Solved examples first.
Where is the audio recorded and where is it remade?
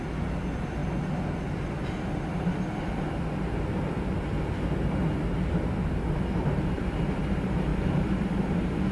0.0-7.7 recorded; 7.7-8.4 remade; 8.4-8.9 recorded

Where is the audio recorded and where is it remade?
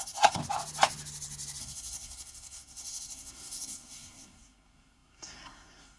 0.0-0.4 remade; 0.4-1.6 recorded; 1.6-6.0 remade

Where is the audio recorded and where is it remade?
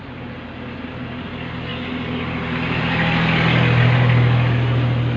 0.0-5.2 recorded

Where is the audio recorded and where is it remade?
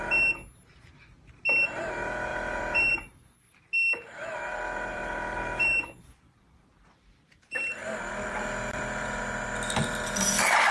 0.0-2.3 recorded; 2.3-3.5 remade; 3.5-4.9 recorded; 4.9-6.6 remade; 6.6-7.8 recorded; 7.8-9.2 remade; 9.2-10.7 recorded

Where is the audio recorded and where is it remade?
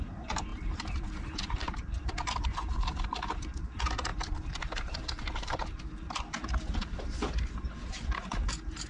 0.0-8.9 remade